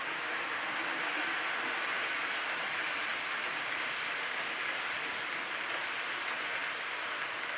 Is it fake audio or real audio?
real